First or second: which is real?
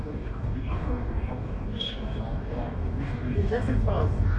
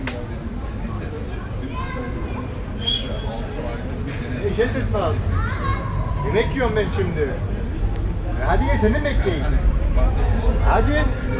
second